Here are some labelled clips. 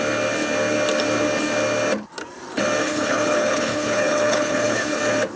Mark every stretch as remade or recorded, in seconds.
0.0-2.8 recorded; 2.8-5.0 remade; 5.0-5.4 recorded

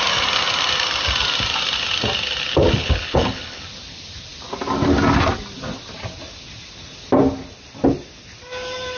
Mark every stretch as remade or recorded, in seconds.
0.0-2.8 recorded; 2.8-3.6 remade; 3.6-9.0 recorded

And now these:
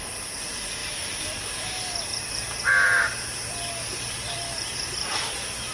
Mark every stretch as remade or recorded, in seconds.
0.0-5.7 recorded

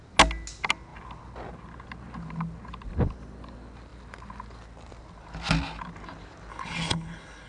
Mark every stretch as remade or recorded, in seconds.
0.0-6.5 recorded; 6.5-7.5 remade

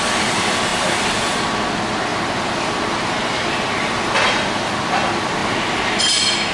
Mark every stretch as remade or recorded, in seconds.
0.0-6.5 recorded

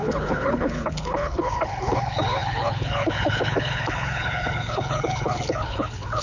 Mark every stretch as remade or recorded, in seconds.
0.0-6.2 remade

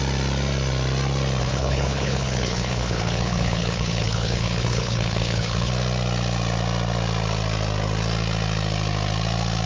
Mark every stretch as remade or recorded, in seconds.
0.0-1.4 recorded; 1.4-5.7 remade; 5.7-9.7 recorded